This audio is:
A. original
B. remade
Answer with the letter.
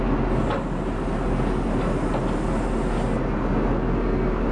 A